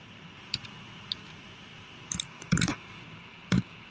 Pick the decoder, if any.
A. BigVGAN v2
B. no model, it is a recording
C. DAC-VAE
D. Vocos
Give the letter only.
A